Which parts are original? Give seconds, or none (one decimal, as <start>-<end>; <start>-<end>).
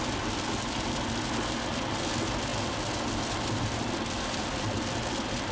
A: 0.0-5.5